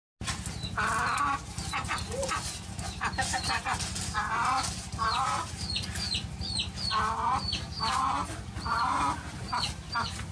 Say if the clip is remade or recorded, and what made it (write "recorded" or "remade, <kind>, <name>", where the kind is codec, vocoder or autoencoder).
recorded